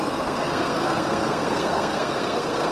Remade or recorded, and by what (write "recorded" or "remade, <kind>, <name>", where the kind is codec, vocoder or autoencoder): remade, codec, SNAC